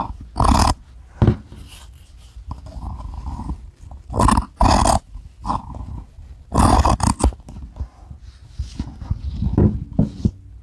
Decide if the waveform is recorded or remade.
recorded